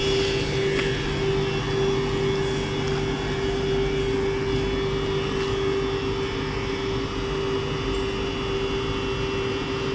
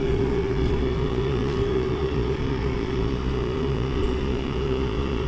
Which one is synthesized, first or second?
second